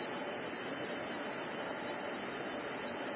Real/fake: real